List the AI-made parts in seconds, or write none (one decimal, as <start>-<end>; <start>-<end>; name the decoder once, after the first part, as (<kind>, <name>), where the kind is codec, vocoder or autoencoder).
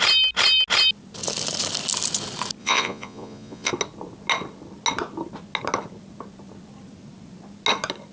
2.6-3.7 (vocoder, Vocos)